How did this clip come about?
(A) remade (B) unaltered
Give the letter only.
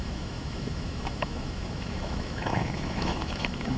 A